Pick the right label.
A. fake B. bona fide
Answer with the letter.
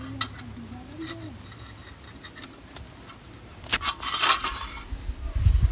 B